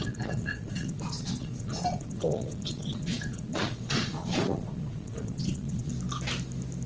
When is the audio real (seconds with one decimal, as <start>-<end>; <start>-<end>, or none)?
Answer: 5.9-6.9